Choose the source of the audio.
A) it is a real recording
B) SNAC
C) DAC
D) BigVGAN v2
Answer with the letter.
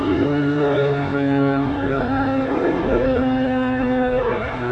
B